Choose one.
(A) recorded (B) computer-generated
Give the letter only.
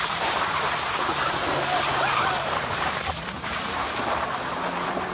B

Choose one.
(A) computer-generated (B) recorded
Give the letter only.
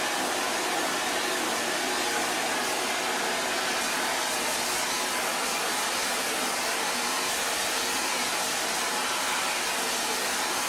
B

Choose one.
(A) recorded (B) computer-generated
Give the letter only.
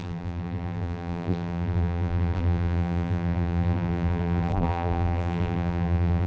B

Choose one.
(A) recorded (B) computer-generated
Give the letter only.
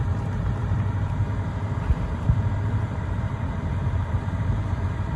B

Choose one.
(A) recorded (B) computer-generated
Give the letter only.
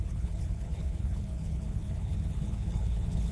B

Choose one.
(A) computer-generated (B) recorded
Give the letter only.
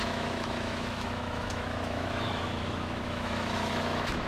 A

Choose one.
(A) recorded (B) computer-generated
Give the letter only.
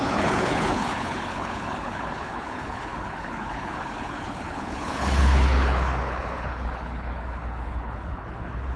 B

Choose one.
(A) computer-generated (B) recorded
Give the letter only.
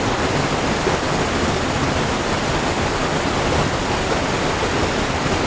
B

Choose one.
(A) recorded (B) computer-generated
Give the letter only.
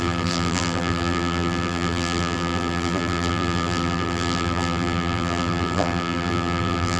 B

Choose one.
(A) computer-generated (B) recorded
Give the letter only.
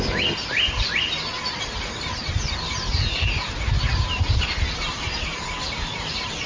B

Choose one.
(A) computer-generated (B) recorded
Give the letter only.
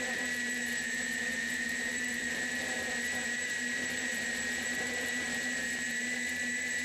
A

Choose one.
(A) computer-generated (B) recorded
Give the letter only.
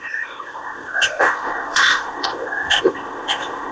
A